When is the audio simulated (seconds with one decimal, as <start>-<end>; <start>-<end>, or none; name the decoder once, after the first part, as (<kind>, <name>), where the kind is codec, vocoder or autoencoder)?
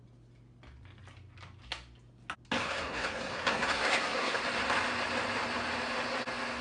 2.6-4.4 (codec, SNAC)